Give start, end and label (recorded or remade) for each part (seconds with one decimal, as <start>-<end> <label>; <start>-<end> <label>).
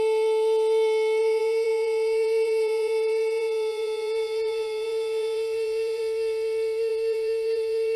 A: 0.0-1.2 recorded; 1.2-6.0 remade; 6.0-6.9 recorded; 6.9-8.0 remade